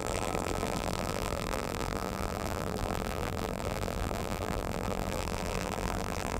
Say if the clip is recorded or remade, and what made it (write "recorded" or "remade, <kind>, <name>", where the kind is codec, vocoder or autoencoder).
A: remade, vocoder, BigVGAN v2